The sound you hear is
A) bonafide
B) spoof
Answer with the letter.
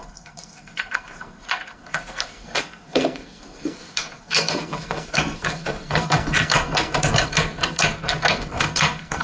B